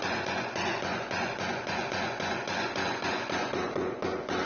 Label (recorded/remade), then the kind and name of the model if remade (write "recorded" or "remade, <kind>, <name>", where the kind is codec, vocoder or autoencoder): remade, vocoder, Vocos